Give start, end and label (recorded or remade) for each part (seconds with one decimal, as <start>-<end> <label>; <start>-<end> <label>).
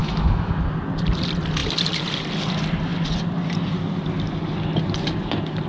0.0-0.5 remade; 0.5-5.7 recorded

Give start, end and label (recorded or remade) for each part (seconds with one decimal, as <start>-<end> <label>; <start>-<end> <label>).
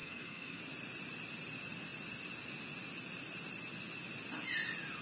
0.0-0.6 remade; 0.6-5.0 recorded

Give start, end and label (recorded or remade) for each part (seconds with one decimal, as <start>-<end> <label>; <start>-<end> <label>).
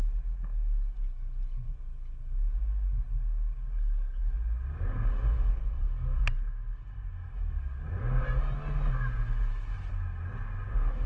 0.0-11.1 recorded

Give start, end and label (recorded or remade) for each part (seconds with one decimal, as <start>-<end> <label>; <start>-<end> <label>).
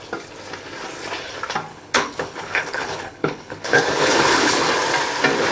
0.0-1.7 recorded; 1.7-4.7 remade; 4.7-5.5 recorded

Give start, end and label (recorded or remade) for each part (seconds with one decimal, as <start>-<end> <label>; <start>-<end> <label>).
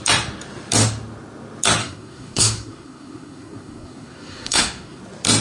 0.0-1.8 recorded; 1.8-5.0 remade; 5.0-5.4 recorded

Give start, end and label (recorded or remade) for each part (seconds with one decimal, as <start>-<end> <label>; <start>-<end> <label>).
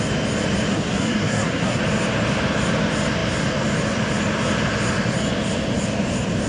0.0-0.7 recorded; 0.7-1.8 remade; 1.8-6.5 recorded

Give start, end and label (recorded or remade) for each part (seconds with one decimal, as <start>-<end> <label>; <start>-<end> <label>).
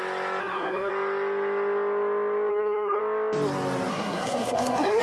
0.0-0.4 recorded; 0.4-0.9 remade; 0.9-2.5 recorded; 2.5-3.0 remade; 3.0-3.9 recorded; 3.9-5.0 remade